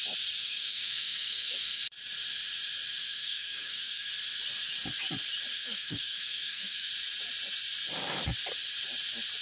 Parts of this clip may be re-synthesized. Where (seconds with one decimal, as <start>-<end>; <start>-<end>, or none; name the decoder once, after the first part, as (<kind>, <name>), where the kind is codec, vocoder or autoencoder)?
0.4-1.8 (codec, SNAC); 3.0-4.1; 5.5-6.9